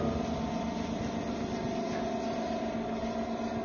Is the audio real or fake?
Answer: real